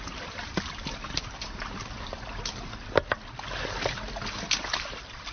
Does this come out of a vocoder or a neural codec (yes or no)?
no